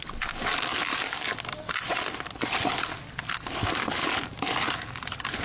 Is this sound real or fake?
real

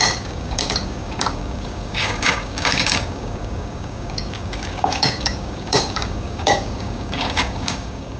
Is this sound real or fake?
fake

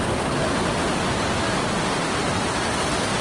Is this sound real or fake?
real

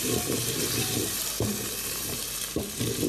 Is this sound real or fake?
fake